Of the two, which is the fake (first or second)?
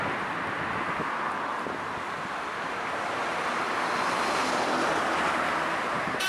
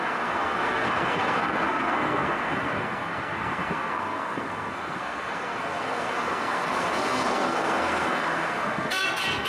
second